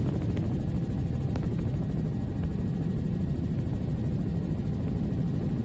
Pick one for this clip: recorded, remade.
recorded